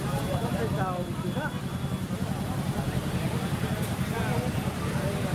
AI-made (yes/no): no